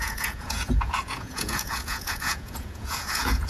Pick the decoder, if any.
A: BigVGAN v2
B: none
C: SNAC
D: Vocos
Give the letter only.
D